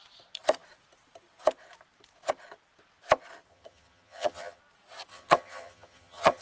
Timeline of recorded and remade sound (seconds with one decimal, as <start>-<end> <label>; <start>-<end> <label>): 0.0-3.5 recorded; 3.5-4.6 remade; 4.6-5.1 recorded; 5.1-6.4 remade